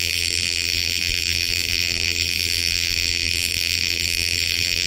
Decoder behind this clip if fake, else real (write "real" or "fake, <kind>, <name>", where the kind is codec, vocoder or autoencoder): fake, vocoder, BigVGAN v2